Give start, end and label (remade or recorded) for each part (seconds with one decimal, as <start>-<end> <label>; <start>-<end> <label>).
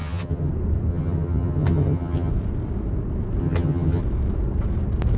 0.0-0.5 remade; 0.5-0.9 recorded; 0.9-2.3 remade; 2.3-3.4 recorded; 3.4-4.0 remade; 4.0-5.2 recorded